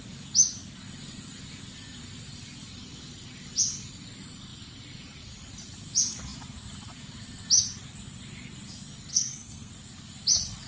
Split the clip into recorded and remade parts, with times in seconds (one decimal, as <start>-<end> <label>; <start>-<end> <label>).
0.0-9.1 recorded; 9.1-9.7 remade; 9.7-10.7 recorded